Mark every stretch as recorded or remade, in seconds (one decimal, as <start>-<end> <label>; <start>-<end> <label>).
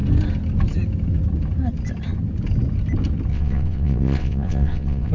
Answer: 0.0-3.3 recorded; 3.3-5.1 remade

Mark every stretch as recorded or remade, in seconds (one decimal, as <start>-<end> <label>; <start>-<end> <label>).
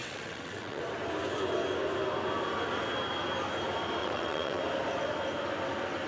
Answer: 0.0-0.8 remade; 0.8-4.0 recorded; 4.0-4.6 remade; 4.6-6.1 recorded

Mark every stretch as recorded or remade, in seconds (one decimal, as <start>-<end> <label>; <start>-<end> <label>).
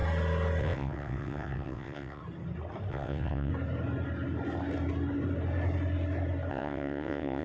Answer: 0.0-0.6 recorded; 0.6-2.2 remade; 2.2-2.9 recorded; 2.9-3.5 remade; 3.5-6.5 recorded; 6.5-7.4 remade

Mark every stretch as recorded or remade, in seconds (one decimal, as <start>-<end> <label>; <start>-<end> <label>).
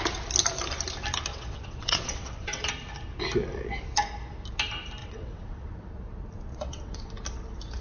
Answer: 0.0-1.3 recorded; 1.3-2.6 remade; 2.6-5.0 recorded; 5.0-5.9 remade; 5.9-6.5 recorded; 6.5-7.1 remade; 7.1-7.8 recorded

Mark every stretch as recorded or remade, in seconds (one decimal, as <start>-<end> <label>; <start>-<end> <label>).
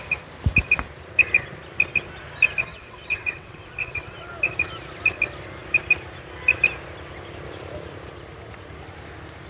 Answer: 0.0-2.7 recorded; 2.7-4.3 remade; 4.3-9.5 recorded